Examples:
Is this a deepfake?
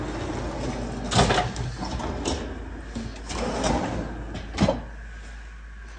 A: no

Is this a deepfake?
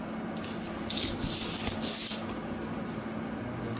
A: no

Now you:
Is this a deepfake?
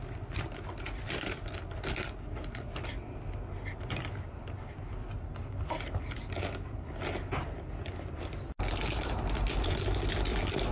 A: no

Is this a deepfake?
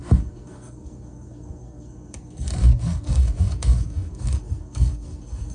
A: yes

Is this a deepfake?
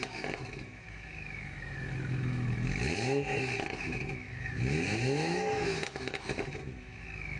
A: yes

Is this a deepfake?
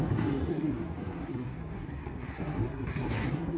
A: yes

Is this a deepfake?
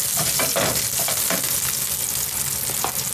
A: no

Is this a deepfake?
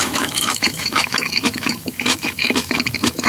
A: yes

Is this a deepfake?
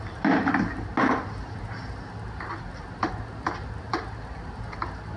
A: no